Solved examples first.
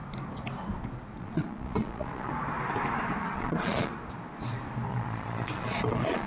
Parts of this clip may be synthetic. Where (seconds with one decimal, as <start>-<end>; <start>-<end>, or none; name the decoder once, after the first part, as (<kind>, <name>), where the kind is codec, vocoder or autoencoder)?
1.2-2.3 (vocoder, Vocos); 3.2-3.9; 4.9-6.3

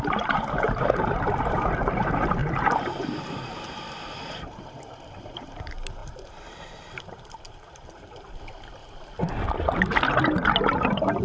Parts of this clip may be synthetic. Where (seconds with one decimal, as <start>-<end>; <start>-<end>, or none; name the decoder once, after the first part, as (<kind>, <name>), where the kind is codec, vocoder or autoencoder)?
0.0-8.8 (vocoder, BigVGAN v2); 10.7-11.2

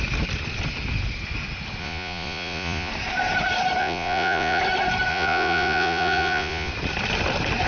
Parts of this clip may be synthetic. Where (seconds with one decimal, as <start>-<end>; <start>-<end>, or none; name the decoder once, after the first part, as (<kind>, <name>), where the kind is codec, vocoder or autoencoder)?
1.8-2.9 (vocoder, Vocos); 3.8-4.6; 5.1-6.7